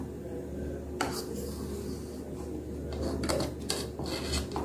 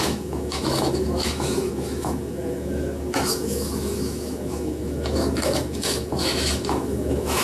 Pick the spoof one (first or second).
second